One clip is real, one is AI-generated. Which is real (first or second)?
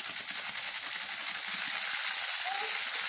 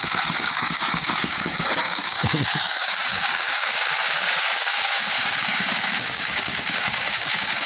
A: first